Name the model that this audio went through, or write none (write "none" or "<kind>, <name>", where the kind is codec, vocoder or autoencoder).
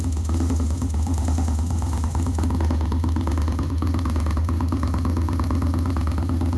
autoencoder, DAC-VAE